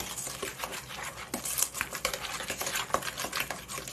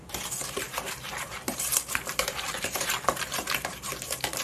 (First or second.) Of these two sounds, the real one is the first